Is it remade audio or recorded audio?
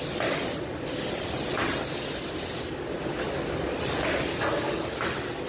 recorded